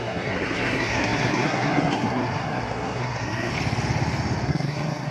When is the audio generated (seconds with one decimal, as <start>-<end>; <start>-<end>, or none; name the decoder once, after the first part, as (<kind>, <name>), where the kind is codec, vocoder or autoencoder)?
0.0-3.5 (codec, SNAC); 4.5-5.1